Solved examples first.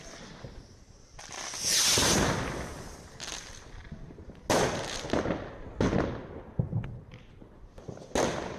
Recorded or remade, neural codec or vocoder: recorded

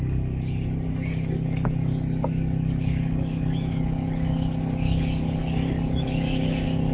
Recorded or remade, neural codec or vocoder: remade, codec, DAC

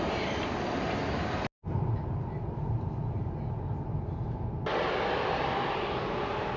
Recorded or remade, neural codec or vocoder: recorded